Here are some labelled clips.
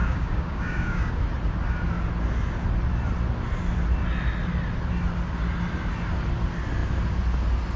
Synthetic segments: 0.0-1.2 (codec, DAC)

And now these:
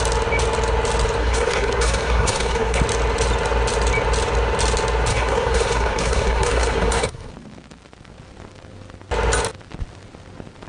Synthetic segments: 1.2-2.8 (codec, SNAC); 5.1-7.3